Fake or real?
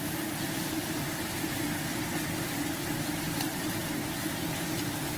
real